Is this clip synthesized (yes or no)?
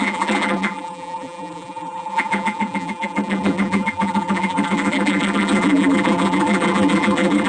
yes